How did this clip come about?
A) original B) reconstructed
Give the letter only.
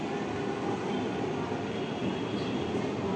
A